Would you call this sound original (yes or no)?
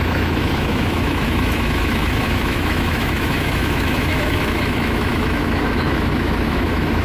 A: no